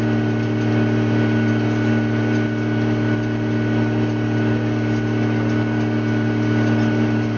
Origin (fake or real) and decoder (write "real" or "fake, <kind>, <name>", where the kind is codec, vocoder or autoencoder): real